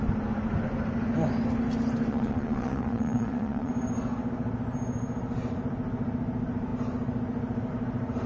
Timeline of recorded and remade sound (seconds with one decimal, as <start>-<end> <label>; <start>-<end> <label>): 0.0-2.1 recorded; 2.1-3.7 remade; 3.7-8.3 recorded